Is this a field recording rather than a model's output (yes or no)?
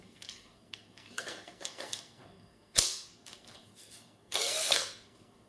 no